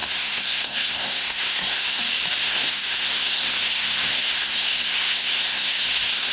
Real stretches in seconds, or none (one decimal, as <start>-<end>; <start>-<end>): 2.0-2.4